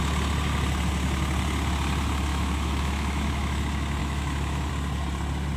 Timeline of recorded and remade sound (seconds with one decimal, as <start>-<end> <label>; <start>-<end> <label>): 0.0-2.3 recorded; 2.3-3.6 remade; 3.6-4.0 recorded; 4.0-4.7 remade; 4.7-5.6 recorded

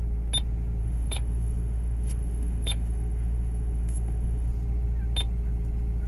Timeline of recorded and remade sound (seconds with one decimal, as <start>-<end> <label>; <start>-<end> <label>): 0.0-0.8 recorded; 0.8-4.5 remade; 4.5-6.1 recorded

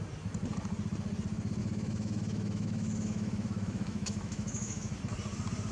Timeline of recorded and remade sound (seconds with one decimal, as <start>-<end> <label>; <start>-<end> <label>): 0.0-1.6 recorded; 1.6-5.0 remade; 5.0-5.7 recorded

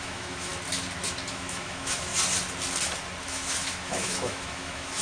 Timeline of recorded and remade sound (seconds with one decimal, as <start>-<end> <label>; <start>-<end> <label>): 0.0-0.5 remade; 0.5-1.3 recorded; 1.3-2.1 remade; 2.1-3.2 recorded; 3.2-5.0 remade

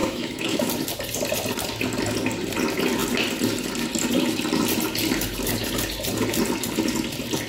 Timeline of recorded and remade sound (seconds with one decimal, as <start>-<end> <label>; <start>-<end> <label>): 0.0-0.7 remade; 0.7-7.5 recorded